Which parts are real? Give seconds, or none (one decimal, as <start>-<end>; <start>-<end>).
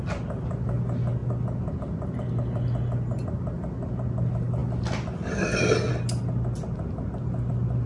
0.0-7.9